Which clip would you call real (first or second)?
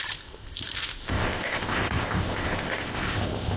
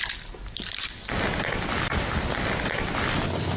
second